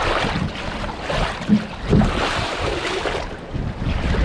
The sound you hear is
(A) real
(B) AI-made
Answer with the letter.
A